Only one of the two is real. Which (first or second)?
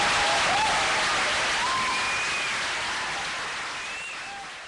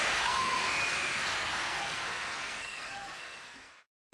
first